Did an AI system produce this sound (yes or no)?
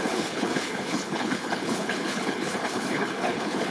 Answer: yes